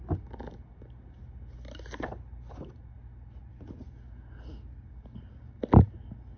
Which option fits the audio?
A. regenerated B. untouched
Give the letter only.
B